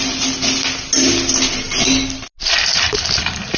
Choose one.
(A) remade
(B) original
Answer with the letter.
B